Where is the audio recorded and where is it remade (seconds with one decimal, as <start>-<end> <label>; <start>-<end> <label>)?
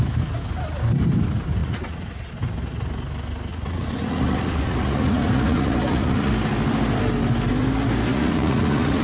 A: 0.0-1.6 recorded; 1.6-2.3 remade; 2.3-3.5 recorded; 3.5-6.3 remade; 6.3-8.1 recorded; 8.1-9.0 remade